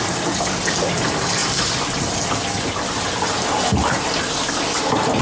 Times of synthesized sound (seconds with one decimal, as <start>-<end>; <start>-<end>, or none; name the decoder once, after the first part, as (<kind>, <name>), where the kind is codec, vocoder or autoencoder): none